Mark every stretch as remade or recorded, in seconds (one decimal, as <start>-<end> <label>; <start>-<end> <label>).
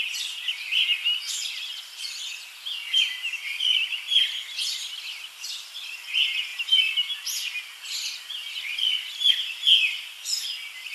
0.0-10.9 recorded